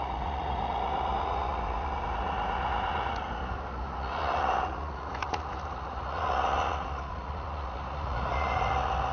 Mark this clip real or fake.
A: fake